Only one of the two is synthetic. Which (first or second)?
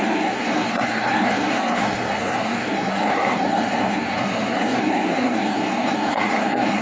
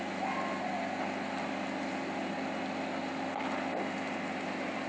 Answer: first